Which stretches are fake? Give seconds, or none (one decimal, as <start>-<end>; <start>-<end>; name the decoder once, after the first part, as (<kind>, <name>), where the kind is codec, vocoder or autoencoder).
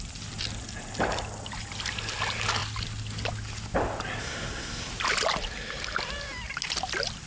4.2-4.9 (codec, SNAC)